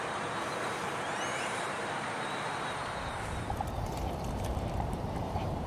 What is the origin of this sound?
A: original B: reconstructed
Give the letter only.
B